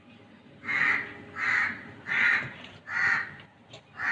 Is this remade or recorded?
recorded